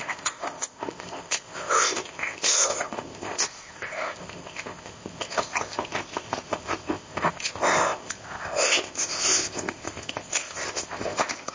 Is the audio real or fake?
fake